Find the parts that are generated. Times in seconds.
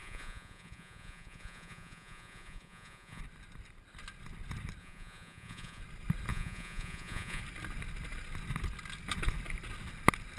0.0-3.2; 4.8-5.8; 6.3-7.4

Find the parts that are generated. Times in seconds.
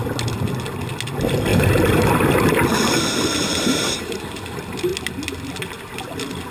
1.5-2.1; 3.5-4.2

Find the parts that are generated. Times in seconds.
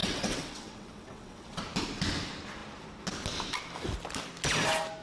0.0-1.6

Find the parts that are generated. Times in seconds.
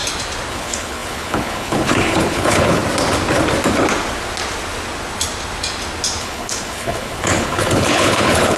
0.5-2.8; 6.2-8.6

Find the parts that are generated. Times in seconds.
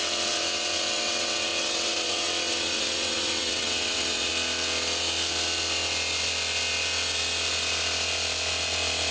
0.0-4.3